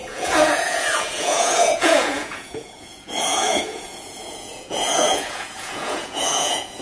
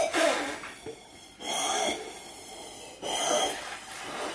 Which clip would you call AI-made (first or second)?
first